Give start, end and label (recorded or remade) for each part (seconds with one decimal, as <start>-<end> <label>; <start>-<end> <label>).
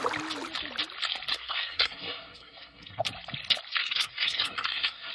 0.0-1.3 recorded; 1.3-3.0 remade; 3.0-3.8 recorded; 3.8-5.1 remade